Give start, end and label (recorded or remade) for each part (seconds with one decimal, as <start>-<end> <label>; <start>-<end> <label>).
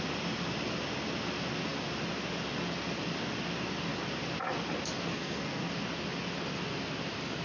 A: 0.0-5.1 recorded; 5.1-5.7 remade; 5.7-7.4 recorded